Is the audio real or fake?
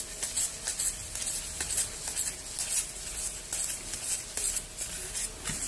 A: real